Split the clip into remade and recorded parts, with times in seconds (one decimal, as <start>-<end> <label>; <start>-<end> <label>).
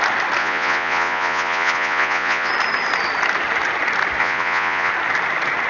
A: 0.0-0.4 recorded; 0.4-2.5 remade; 2.5-4.2 recorded; 4.2-4.9 remade; 4.9-5.7 recorded